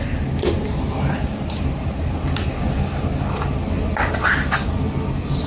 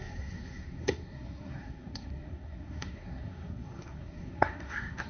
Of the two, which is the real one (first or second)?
first